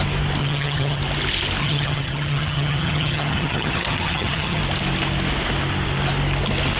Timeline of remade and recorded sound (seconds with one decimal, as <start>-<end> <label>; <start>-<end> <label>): 0.0-0.4 recorded; 0.4-1.0 remade; 1.0-1.6 recorded; 1.6-4.6 remade; 4.6-6.8 recorded